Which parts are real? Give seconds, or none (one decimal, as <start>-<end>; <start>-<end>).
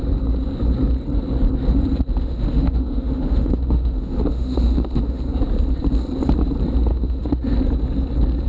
0.0-2.2; 5.2-6.9; 7.4-8.5